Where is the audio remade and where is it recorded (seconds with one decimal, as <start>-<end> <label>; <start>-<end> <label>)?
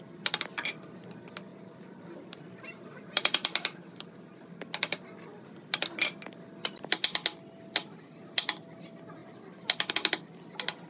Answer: 0.0-1.5 recorded; 1.5-4.6 remade; 4.6-10.9 recorded